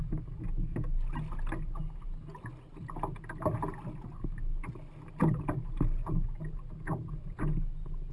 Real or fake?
real